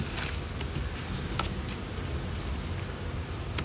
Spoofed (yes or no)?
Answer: no